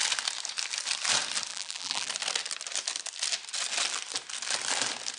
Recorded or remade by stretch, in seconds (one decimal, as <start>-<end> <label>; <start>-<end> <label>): 0.0-1.5 recorded; 1.5-2.1 remade; 2.1-5.2 recorded